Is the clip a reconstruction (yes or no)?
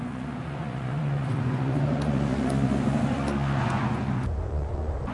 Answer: yes